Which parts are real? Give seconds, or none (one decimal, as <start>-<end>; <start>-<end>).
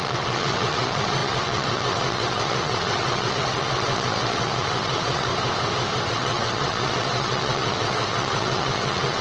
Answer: 5.3-6.1